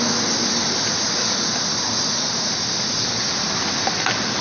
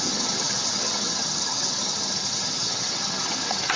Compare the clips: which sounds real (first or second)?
first